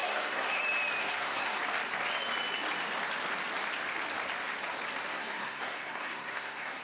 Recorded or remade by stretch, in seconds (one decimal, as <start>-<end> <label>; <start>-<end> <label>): 0.0-0.6 remade; 0.6-1.0 recorded; 1.0-1.6 remade; 1.6-5.1 recorded; 5.1-6.8 remade